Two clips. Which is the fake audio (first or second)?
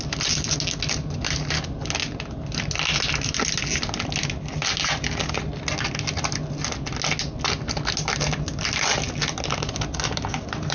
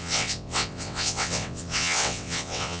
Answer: second